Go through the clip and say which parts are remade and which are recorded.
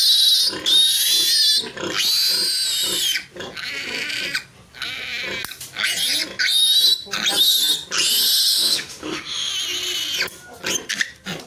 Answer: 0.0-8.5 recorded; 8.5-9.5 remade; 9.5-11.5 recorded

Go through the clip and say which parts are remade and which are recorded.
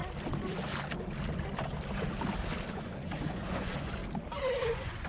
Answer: 0.0-2.7 recorded; 2.7-4.0 remade; 4.0-4.6 recorded; 4.6-5.1 remade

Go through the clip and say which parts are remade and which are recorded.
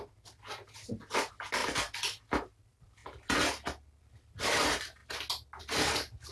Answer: 0.0-3.0 remade; 3.0-4.0 recorded; 4.0-5.0 remade; 5.0-5.6 recorded; 5.6-6.3 remade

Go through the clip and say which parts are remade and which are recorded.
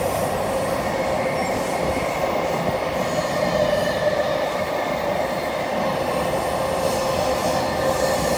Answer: 0.0-8.4 recorded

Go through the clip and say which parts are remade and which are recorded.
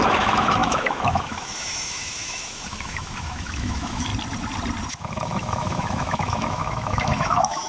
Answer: 0.0-4.1 remade; 4.1-4.9 recorded; 4.9-7.7 remade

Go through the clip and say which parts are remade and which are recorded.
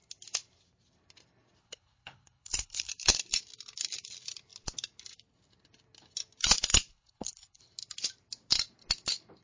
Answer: 0.0-1.6 recorded; 1.6-2.9 remade; 2.9-6.9 recorded; 6.9-7.6 remade; 7.6-9.4 recorded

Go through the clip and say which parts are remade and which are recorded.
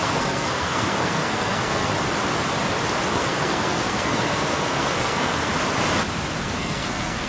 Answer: 0.0-1.9 remade; 1.9-3.1 recorded; 3.1-5.5 remade; 5.5-6.4 recorded; 6.4-7.3 remade